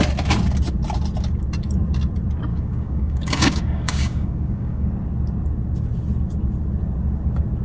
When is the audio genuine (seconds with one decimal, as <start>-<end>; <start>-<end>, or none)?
0.0-2.5; 4.9-7.6